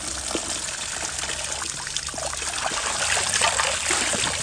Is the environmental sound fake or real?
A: real